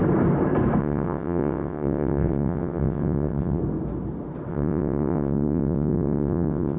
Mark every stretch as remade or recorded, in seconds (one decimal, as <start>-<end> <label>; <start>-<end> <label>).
0.0-0.8 recorded; 0.8-3.6 remade; 3.6-4.5 recorded; 4.5-6.8 remade